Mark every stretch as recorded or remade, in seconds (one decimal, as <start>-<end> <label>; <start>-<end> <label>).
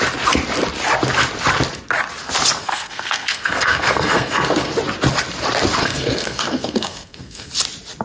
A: 0.0-2.6 recorded; 2.6-4.7 remade; 4.7-5.8 recorded; 5.8-7.5 remade; 7.5-8.0 recorded